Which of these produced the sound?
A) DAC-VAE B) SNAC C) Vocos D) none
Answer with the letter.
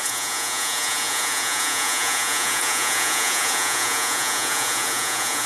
C